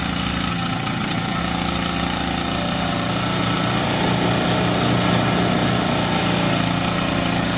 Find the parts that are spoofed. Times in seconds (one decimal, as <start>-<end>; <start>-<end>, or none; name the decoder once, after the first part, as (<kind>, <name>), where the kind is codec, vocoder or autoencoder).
0.5-1.4 (vocoder, HiFi-GAN)